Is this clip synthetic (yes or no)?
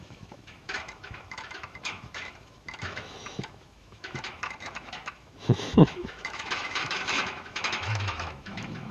yes